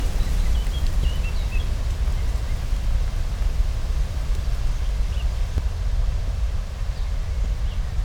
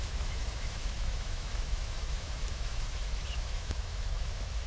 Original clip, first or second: first